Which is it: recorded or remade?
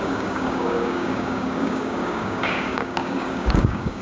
remade